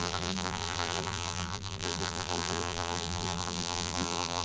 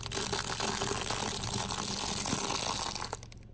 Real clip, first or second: second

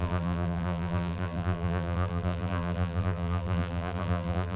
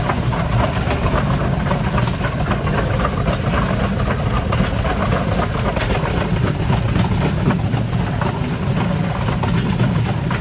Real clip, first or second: second